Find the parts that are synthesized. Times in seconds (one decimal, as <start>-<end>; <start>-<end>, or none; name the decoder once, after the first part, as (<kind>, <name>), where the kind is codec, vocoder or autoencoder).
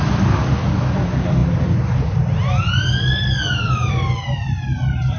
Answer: 0.0-5.2 (vocoder, BigVGAN v2)